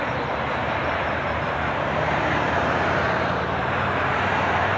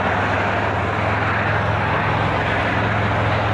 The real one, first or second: second